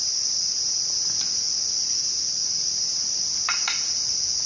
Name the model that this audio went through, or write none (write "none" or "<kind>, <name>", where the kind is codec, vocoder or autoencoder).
none